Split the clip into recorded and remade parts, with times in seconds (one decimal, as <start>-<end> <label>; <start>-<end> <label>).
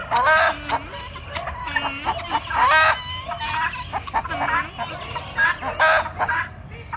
0.0-7.0 recorded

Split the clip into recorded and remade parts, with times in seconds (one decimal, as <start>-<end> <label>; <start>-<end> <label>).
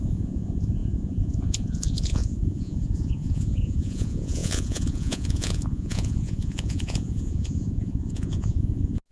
0.0-9.1 remade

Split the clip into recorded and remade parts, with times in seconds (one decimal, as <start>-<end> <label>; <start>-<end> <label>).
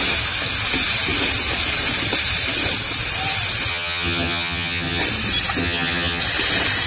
0.0-3.7 recorded; 3.7-5.0 remade; 5.0-5.6 recorded; 5.6-6.2 remade; 6.2-6.9 recorded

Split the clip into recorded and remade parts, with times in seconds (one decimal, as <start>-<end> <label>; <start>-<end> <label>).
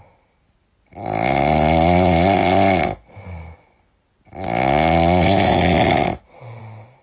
0.0-7.0 recorded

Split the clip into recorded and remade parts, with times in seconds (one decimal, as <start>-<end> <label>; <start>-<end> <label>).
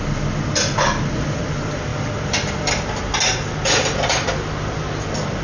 0.0-5.4 recorded